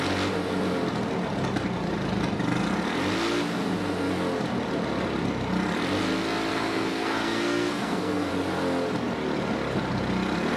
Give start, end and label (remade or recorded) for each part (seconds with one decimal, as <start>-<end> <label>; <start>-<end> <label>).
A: 0.0-6.5 recorded; 6.5-8.3 remade; 8.3-10.6 recorded